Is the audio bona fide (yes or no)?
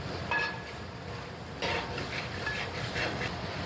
yes